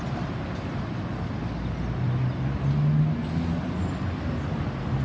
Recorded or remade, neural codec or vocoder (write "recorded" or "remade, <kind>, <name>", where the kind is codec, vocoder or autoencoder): recorded